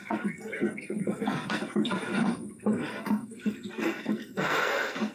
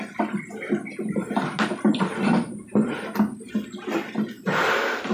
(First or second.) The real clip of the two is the second